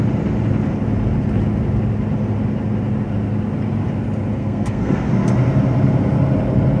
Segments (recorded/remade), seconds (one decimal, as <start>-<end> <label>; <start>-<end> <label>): 0.0-4.4 recorded; 4.4-5.1 remade; 5.1-6.8 recorded